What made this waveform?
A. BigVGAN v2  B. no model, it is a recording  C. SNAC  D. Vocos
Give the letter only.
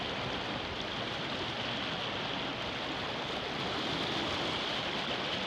B